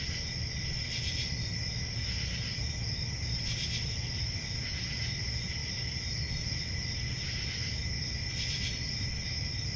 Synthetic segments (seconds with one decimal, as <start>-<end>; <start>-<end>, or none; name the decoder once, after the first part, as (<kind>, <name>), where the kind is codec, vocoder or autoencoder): none